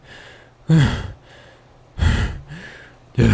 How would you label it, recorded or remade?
recorded